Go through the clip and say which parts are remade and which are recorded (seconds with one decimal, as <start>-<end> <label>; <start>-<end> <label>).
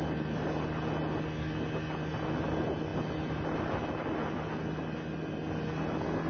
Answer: 0.0-6.3 recorded